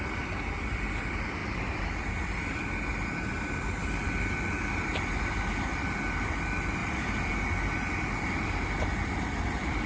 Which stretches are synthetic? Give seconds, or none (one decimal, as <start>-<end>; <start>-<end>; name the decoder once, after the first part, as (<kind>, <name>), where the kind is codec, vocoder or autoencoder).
1.4-2.1 (vocoder, BigVGAN v2); 6.8-7.3